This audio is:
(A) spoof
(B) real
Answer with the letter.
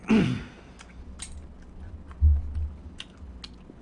B